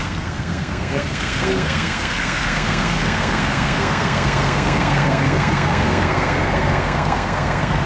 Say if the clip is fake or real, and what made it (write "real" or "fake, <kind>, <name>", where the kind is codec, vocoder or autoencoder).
fake, codec, SNAC